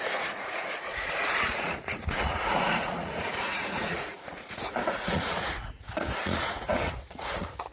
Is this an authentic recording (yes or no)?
no